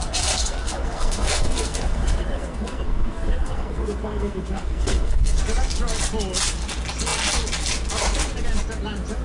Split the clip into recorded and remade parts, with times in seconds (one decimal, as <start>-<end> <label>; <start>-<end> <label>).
0.0-0.4 recorded; 0.4-5.4 remade; 5.4-9.2 recorded